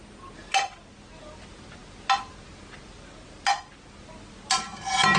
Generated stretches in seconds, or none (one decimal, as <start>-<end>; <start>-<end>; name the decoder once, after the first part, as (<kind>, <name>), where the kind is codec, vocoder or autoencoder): none